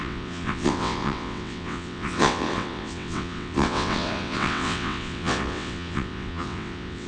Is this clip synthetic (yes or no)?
yes